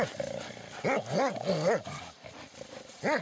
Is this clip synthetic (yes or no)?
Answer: no